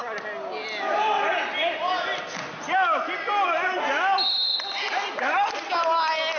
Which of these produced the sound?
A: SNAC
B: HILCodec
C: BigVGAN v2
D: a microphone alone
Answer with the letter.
D